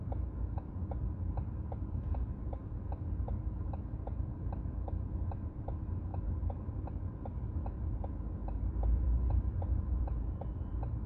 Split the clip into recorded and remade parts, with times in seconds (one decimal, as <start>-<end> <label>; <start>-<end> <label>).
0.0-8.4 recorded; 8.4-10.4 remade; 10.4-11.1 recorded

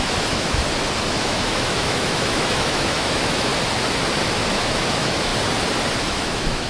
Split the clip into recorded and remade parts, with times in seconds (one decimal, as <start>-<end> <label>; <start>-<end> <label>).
0.0-0.6 remade; 0.6-1.2 recorded; 1.2-3.5 remade; 3.5-4.5 recorded; 4.5-5.3 remade; 5.3-6.0 recorded; 6.0-6.7 remade

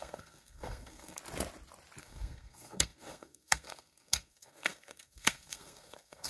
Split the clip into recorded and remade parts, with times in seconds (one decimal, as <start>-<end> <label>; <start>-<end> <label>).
0.0-1.2 remade; 1.2-2.0 recorded; 2.0-6.3 remade